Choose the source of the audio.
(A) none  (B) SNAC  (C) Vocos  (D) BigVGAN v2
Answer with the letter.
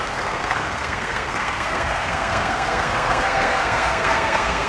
B